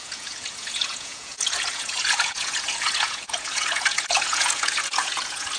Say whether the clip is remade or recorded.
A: remade